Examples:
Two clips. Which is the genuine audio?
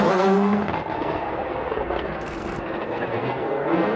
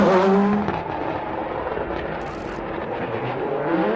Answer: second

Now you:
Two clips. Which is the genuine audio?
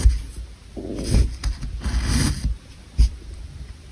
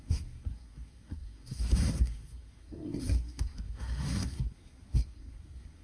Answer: first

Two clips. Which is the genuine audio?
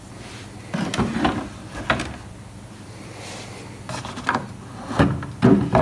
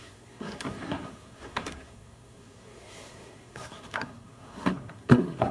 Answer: first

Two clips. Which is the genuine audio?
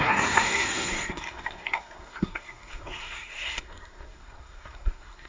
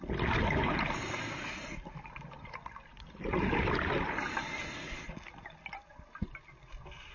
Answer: second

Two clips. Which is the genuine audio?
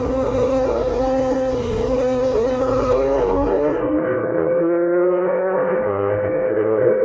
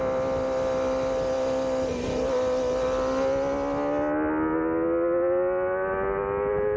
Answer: second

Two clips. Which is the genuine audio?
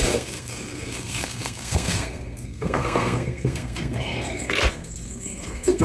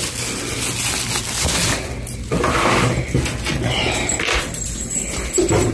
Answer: second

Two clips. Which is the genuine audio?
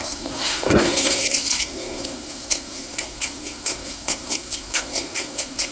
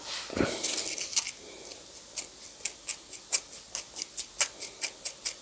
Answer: second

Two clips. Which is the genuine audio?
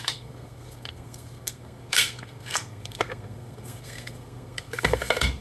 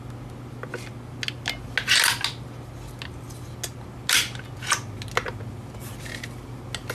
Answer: second